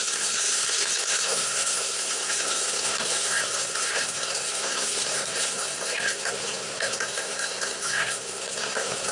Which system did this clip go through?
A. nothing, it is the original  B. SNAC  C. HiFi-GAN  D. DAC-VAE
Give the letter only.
B